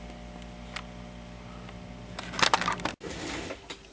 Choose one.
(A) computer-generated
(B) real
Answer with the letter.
B